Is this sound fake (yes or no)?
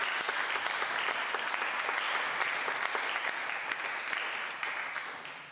no